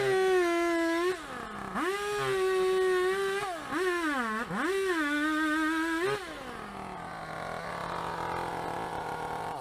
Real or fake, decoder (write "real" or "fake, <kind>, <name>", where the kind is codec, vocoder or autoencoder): real